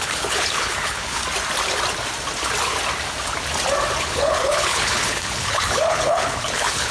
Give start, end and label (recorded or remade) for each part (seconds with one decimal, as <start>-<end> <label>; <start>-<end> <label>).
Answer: 0.0-1.2 remade; 1.2-4.0 recorded; 4.0-6.9 remade